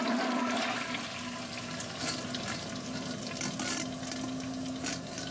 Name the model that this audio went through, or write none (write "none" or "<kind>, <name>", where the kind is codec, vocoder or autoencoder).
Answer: none